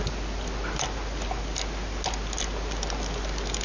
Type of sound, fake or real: real